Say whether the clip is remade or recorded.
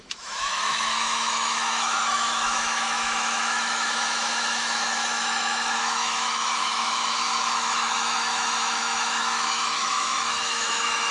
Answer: remade